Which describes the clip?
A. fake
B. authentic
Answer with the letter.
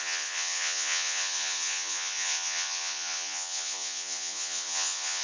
A